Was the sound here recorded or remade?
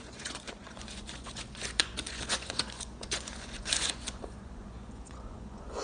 remade